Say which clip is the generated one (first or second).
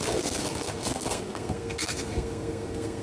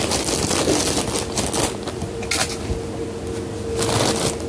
first